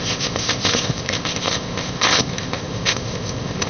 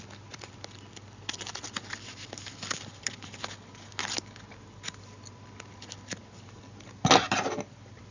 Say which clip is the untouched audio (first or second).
second